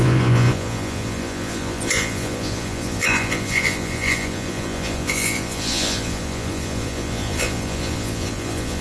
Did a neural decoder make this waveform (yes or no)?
yes